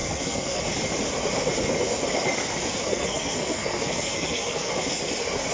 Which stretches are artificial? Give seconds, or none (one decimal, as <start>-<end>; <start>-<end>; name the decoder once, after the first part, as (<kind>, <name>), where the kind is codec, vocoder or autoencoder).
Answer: 0.0-0.6 (codec, SNAC); 2.9-4.7